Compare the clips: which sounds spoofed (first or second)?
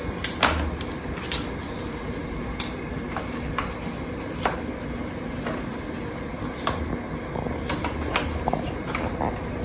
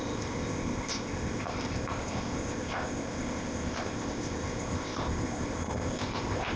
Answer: second